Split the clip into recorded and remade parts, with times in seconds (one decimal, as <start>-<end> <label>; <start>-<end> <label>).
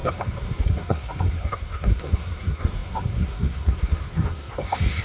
0.0-5.0 remade